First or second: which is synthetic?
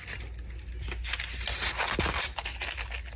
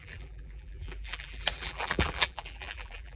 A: second